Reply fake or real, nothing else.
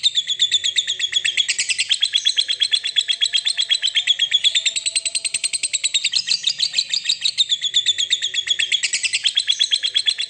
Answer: real